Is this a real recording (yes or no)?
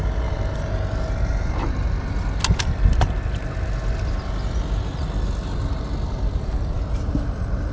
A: yes